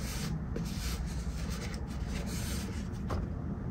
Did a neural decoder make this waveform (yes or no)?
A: no